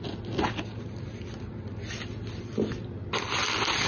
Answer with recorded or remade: recorded